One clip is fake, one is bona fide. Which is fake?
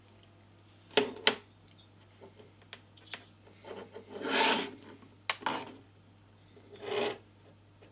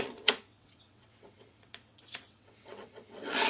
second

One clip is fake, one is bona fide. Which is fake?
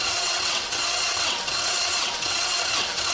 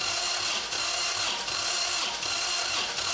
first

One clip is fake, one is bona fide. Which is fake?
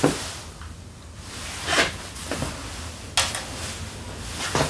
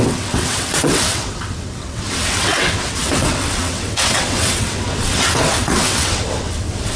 second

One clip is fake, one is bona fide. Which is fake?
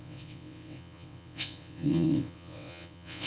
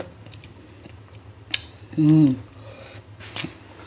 first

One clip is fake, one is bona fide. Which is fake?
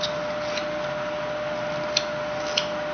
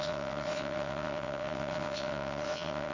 second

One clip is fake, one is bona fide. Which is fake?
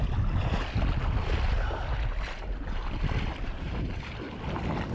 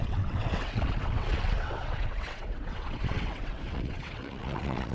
second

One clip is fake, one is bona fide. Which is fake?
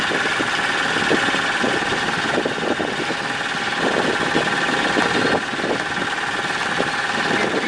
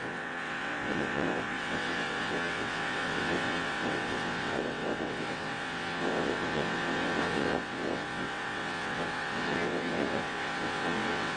second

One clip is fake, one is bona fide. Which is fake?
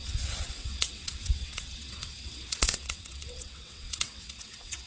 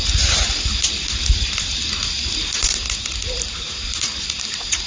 first